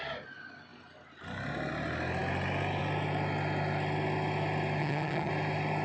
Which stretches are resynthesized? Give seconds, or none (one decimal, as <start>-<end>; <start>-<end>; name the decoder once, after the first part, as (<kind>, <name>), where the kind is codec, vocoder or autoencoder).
4.8-5.3 (vocoder, HiFi-GAN)